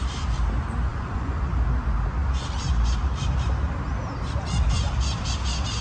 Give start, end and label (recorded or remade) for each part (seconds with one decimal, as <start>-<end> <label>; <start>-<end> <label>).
0.0-0.9 recorded; 0.9-1.4 remade; 1.4-5.8 recorded